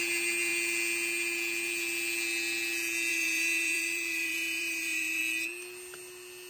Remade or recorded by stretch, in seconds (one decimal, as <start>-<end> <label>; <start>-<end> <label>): 0.0-3.1 recorded; 3.1-5.2 remade; 5.2-6.5 recorded